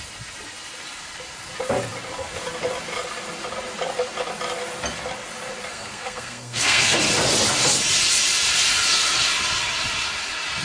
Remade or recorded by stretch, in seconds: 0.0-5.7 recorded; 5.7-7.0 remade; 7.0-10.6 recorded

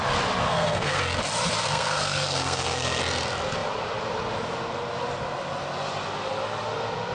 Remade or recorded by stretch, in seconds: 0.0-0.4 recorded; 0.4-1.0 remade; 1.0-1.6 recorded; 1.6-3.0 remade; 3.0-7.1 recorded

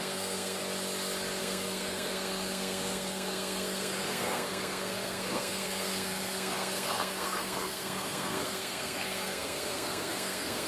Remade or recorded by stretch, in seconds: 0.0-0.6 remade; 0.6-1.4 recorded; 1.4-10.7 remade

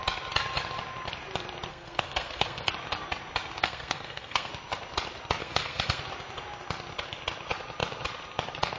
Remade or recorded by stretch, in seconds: 0.0-1.7 recorded; 1.7-2.7 remade; 2.7-3.6 recorded; 3.6-4.5 remade; 4.5-5.4 recorded; 5.4-6.0 remade; 6.0-8.8 recorded

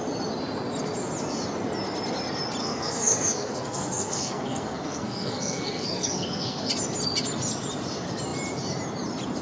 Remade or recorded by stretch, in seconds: 0.0-2.6 recorded; 2.6-6.7 remade; 6.7-9.4 recorded